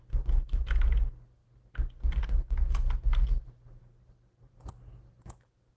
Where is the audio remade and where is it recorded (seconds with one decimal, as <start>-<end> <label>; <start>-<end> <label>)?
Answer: 0.0-5.8 recorded